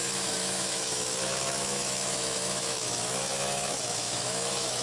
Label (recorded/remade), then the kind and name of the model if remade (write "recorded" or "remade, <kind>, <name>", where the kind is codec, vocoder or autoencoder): remade, autoencoder, DAC-VAE